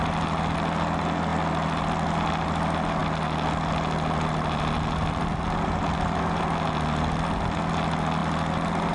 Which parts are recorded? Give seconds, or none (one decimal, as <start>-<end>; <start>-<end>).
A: 0.0-8.9